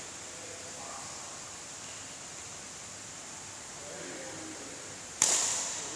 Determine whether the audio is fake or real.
real